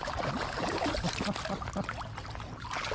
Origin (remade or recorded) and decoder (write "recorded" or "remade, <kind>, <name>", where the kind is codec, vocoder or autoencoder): recorded